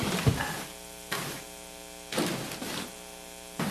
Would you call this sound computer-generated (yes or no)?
yes